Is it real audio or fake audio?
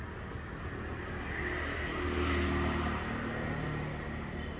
real